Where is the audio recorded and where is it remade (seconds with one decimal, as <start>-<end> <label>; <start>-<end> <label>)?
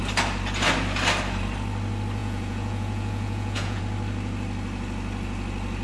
0.0-2.2 recorded; 2.2-3.8 remade; 3.8-5.8 recorded